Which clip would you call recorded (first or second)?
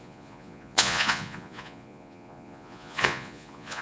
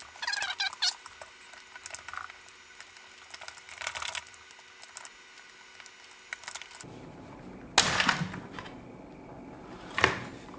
second